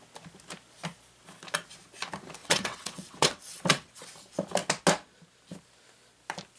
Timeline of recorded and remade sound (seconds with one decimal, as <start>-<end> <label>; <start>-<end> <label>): 0.0-2.4 recorded; 2.4-3.9 remade; 3.9-6.6 recorded